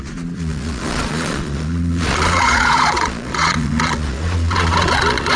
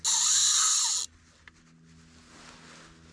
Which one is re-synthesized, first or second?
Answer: first